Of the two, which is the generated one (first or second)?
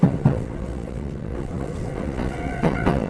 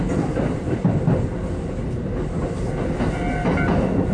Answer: first